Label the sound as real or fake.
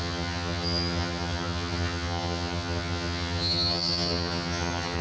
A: fake